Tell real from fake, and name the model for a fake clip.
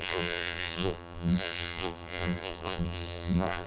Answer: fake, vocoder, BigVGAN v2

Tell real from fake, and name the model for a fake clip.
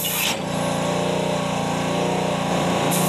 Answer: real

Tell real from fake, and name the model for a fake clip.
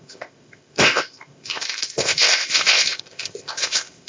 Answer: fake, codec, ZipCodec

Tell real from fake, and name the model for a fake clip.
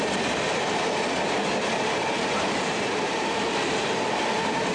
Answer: real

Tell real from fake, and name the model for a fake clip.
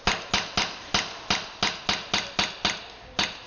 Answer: real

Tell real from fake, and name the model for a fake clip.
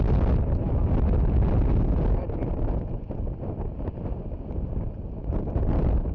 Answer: real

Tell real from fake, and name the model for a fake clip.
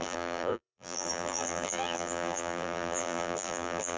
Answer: fake, vocoder, BigVGAN v2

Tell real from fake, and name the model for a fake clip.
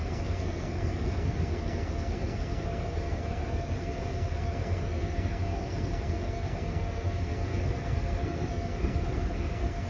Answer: fake, codec, SNAC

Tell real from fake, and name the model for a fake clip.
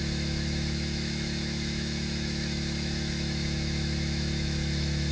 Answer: fake, autoencoder, DAC-VAE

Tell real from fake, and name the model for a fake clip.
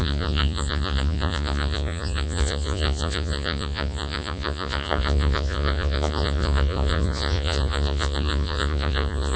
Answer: fake, vocoder, Vocos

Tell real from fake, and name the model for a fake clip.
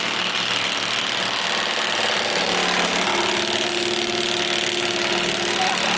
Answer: real